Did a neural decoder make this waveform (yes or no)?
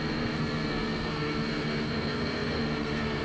yes